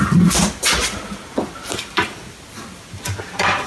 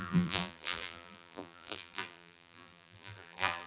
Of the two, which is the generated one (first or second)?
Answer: second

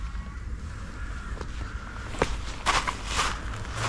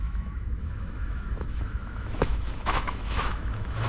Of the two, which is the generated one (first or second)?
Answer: second